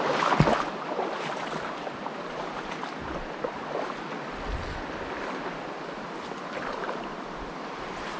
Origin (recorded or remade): recorded